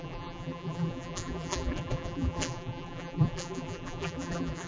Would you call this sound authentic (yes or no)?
no